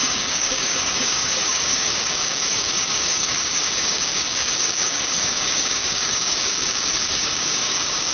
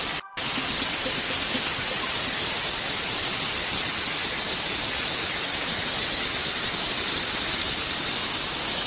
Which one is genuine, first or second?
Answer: second